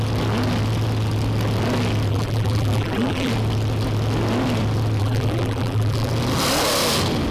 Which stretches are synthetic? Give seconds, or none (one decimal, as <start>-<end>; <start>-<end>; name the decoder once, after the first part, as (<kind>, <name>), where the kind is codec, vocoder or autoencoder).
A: 2.1-3.3 (vocoder, BigVGAN v2); 5.0-6.1